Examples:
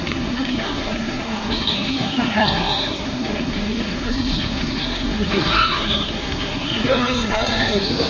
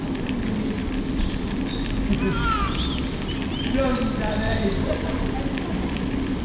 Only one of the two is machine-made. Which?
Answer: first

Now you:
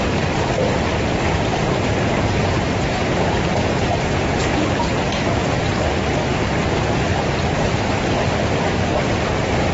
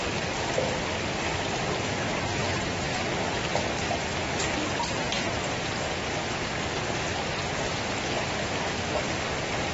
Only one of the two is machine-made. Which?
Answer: first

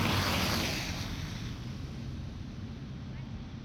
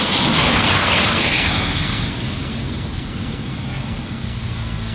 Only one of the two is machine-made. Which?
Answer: second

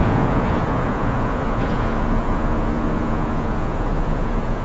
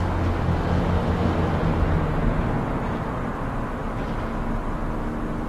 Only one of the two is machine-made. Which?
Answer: first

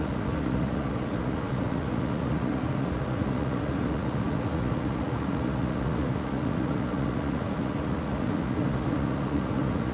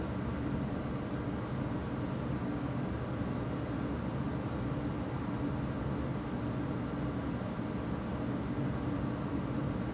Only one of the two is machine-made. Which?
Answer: first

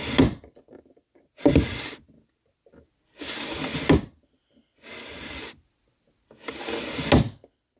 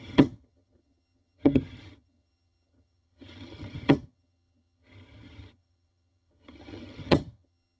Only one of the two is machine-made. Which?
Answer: second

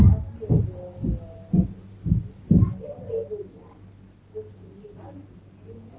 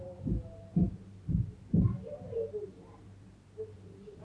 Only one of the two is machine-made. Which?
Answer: second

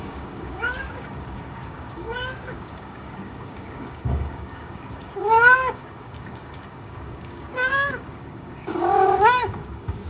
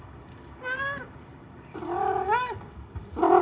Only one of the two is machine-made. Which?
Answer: first